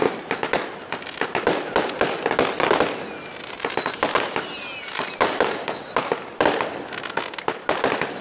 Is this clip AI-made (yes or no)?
no